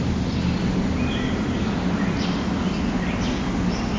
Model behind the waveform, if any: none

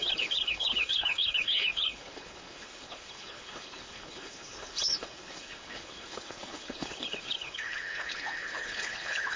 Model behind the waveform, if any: codec, HILCodec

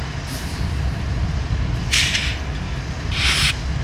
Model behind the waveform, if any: none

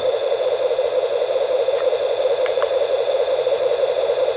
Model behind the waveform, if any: vocoder, Vocos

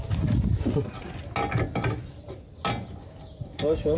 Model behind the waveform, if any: none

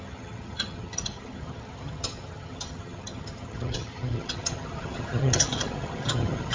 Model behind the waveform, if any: vocoder, HiFi-GAN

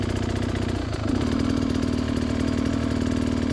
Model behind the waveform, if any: none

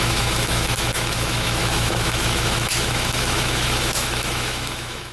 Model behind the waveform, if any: autoencoder, DAC-VAE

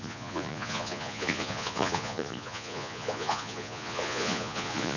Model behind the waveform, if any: vocoder, Vocos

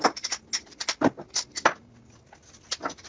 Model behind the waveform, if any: none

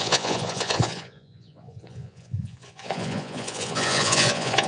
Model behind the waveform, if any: vocoder, Vocos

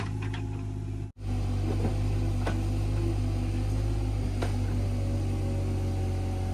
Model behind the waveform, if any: none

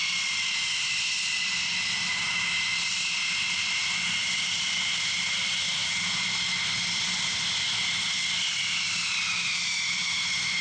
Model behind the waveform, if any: none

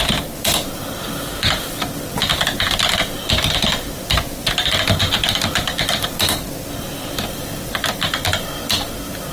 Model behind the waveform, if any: none